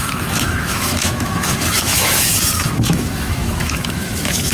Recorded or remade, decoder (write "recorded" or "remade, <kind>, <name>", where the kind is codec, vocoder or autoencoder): remade, autoencoder, DAC-VAE